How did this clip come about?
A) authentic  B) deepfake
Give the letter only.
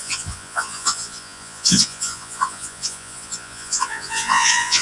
B